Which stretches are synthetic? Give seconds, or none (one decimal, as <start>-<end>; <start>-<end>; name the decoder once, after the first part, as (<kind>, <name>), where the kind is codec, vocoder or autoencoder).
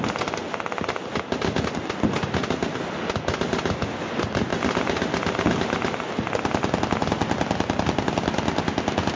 none